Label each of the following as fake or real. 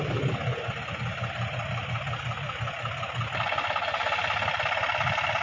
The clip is real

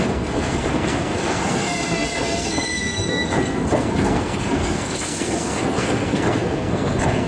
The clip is fake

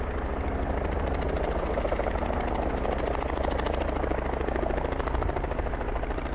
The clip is real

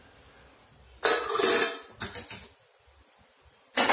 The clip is real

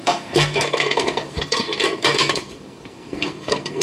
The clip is fake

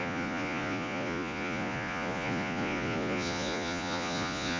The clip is fake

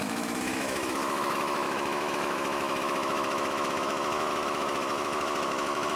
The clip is fake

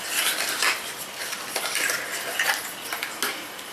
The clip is real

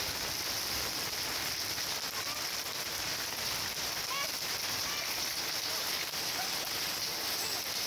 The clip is real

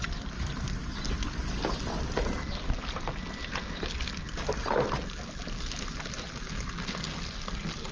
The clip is real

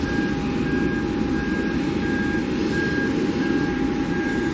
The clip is real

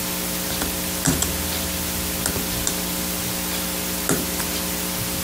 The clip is real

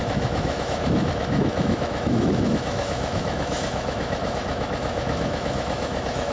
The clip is fake